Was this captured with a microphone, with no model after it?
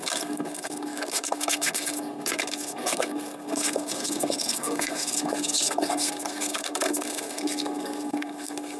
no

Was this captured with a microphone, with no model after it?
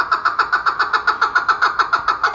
yes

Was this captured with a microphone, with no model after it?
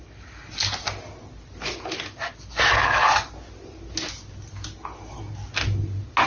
yes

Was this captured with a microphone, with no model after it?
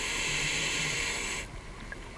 yes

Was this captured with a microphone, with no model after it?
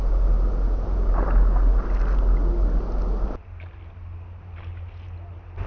yes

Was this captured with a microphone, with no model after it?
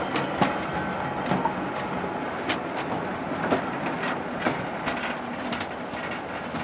yes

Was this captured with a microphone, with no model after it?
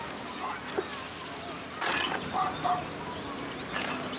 yes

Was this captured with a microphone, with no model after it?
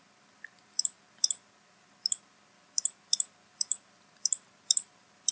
yes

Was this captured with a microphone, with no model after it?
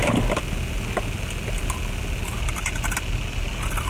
yes